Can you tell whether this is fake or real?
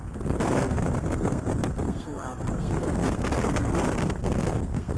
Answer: fake